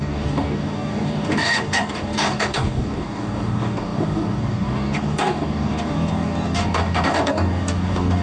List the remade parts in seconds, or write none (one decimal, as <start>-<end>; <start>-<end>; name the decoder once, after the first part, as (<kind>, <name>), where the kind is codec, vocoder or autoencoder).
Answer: 0.0-8.2 (codec, DAC)